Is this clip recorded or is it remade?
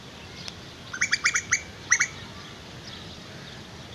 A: recorded